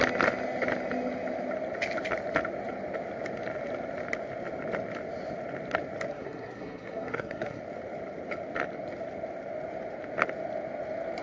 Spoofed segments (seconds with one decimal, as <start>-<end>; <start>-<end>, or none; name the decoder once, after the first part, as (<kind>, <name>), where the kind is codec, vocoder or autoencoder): 6.1-7.6 (codec, SNAC)